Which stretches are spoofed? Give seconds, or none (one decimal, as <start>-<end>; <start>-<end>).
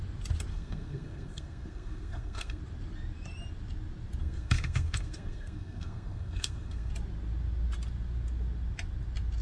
0.5-2.6; 4.2-6.9